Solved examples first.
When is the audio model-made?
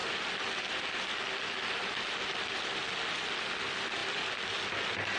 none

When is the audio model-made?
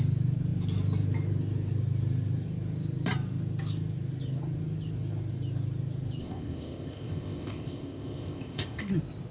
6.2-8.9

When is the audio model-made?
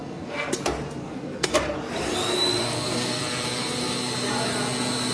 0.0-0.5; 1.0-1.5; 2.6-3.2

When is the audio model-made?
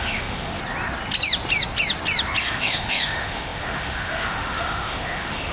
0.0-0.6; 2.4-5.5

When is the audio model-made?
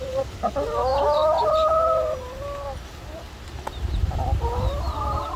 none